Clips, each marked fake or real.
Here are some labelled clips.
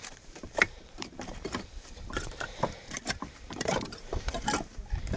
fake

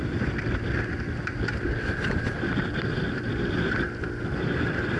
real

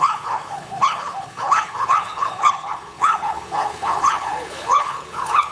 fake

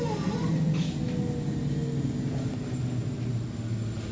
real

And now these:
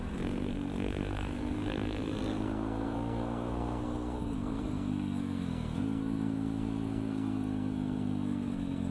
fake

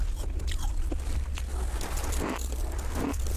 real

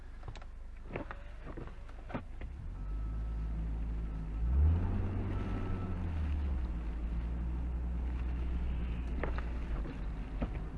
real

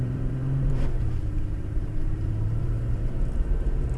fake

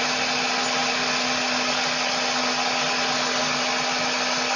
real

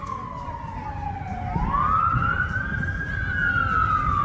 real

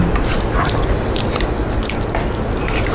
real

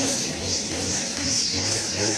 fake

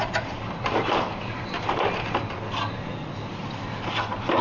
fake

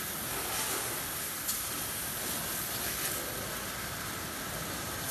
real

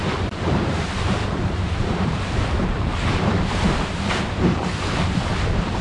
fake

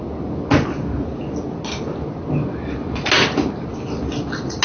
real